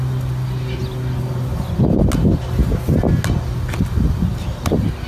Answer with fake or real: real